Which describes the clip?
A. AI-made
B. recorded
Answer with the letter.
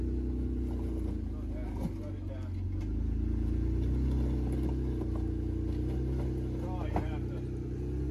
B